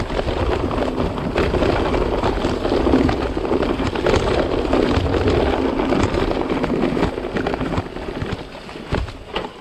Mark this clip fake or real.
real